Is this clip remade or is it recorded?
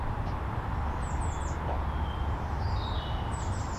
recorded